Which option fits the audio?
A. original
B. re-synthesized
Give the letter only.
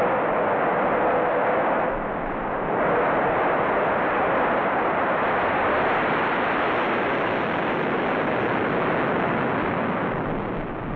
A